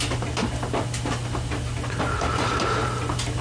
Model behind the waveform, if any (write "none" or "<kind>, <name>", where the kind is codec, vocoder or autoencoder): none